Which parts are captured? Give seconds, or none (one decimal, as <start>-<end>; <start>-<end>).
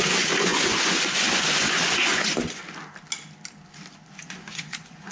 2.6-4.3